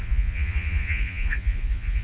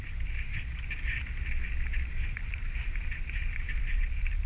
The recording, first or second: second